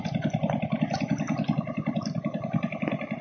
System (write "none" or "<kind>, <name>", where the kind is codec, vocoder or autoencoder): none